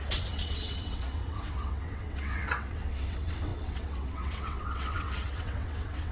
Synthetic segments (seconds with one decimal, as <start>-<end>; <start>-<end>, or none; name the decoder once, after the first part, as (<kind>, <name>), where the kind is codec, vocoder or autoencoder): 0.0-6.1 (vocoder, WaveNeXt)